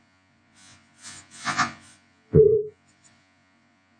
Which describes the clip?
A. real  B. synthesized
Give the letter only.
B